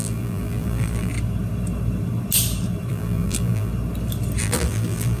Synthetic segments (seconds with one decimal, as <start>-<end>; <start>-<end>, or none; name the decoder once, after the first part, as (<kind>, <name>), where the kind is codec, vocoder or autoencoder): 0.0-1.1 (vocoder, BigVGAN v2); 2.9-3.7; 4.4-5.2